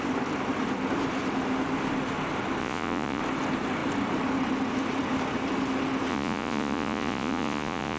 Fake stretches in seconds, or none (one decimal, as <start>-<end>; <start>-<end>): 2.6-3.2; 6.1-8.0